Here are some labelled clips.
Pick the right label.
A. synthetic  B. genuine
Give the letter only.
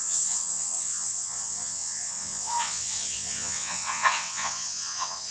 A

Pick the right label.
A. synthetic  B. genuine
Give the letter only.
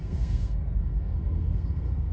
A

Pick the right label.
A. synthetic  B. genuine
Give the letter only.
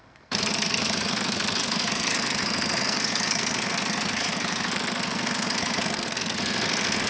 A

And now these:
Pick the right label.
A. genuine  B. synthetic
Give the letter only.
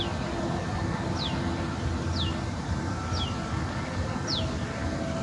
A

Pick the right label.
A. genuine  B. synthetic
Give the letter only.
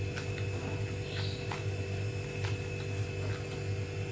A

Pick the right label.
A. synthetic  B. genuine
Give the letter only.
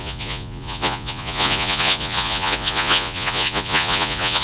A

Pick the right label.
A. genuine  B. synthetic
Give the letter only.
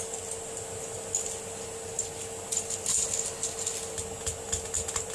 A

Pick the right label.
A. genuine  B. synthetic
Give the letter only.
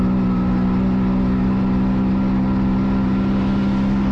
A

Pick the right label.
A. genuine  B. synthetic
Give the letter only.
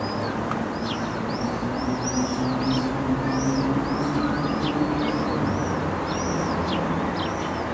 A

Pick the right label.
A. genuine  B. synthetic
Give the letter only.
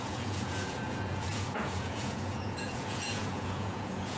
B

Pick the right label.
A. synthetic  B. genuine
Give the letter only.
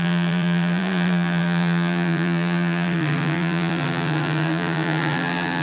A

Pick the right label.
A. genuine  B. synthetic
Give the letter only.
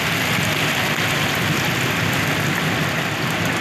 A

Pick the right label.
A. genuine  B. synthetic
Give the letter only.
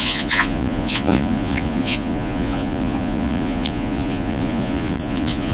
B